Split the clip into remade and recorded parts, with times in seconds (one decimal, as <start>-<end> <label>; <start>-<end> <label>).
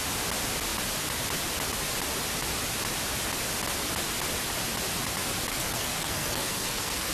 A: 0.0-5.5 recorded; 5.5-7.1 remade